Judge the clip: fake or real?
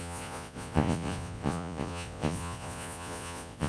fake